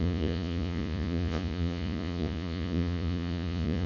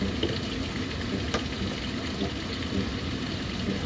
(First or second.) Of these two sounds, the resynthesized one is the first